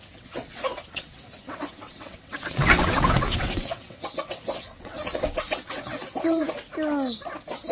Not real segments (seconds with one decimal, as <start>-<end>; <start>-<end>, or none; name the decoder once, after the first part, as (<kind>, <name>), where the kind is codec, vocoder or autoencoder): 0.0-6.4 (vocoder, WaveNeXt)